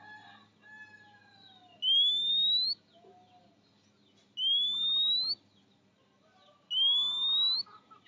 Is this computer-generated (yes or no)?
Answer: no